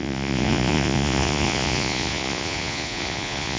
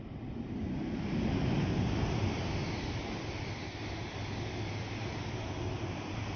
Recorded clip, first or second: second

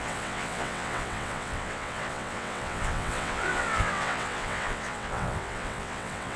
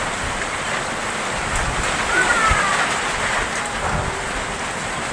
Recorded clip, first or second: second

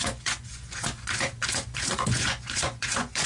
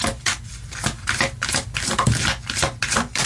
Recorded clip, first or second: second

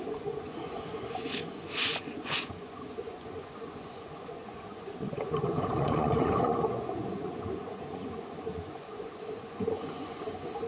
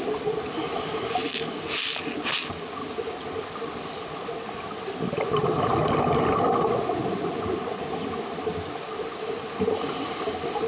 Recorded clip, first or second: second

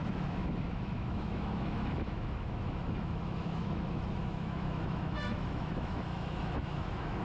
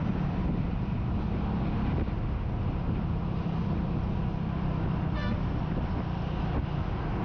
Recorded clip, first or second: second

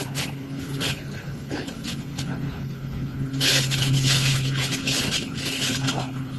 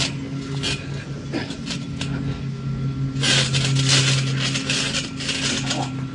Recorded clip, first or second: second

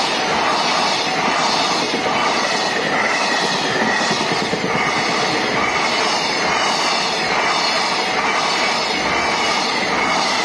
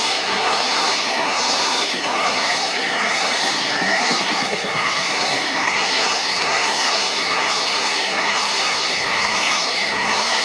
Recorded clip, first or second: first